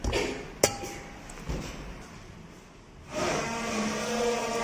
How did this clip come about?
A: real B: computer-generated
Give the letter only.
A